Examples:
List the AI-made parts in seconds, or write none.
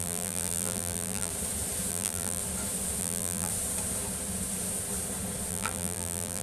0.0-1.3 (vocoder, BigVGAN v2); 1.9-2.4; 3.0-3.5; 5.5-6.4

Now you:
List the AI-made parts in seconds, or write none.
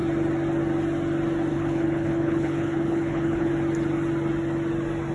1.5-3.5 (codec, HILCodec)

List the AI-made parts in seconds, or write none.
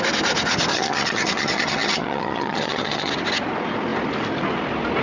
0.7-3.1 (vocoder, HiFi-GAN)